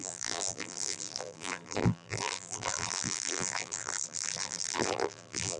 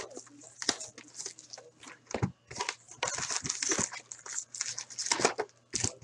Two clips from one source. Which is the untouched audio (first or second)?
second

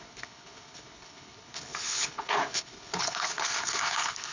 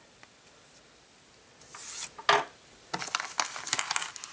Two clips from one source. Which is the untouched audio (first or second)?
second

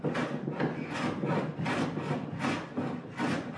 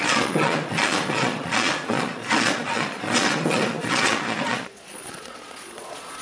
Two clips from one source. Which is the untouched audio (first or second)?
first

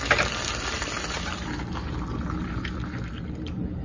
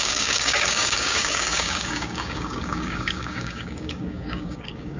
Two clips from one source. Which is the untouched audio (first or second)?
first